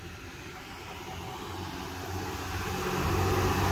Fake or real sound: real